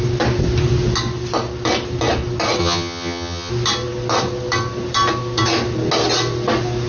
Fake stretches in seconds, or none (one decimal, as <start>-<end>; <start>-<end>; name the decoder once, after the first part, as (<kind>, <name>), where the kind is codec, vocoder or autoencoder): 2.6-3.5 (vocoder, HiFi-GAN)